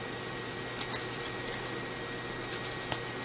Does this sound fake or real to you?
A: real